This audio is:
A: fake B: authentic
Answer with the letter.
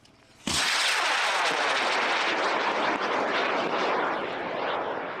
B